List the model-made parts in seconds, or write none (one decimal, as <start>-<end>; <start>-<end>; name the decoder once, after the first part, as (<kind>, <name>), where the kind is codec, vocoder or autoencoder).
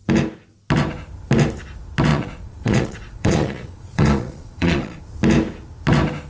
2.1-5.0 (vocoder, Vocos)